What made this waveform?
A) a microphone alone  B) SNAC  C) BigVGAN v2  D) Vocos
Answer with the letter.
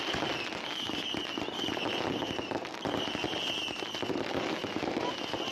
A